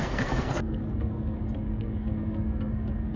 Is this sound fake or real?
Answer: fake